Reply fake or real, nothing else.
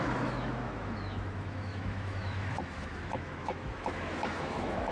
fake